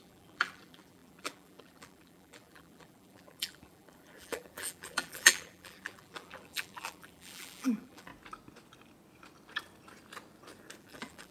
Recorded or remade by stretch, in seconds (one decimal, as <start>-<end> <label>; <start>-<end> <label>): 0.0-8.1 remade; 8.1-10.8 recorded; 10.8-11.3 remade